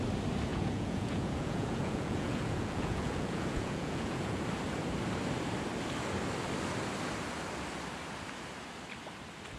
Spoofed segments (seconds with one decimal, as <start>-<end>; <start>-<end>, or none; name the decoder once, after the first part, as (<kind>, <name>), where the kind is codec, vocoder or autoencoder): 0.5-4.4 (vocoder, Vocos)